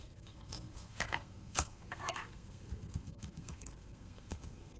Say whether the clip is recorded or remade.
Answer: remade